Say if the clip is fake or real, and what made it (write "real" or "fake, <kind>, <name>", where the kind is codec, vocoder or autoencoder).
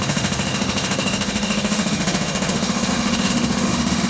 fake, autoencoder, DAC-VAE